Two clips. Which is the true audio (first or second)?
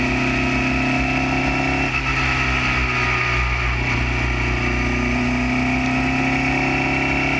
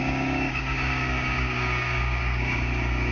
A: first